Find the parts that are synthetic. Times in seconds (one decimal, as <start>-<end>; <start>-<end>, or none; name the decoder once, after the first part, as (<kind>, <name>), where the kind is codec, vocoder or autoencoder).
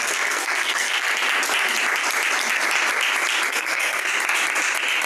0.0-1.1 (codec, SNAC); 3.5-4.1